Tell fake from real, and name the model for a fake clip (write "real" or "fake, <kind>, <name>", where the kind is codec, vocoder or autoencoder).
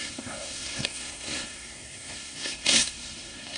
fake, codec, SNAC